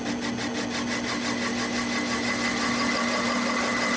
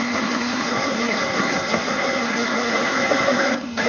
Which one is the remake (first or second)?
second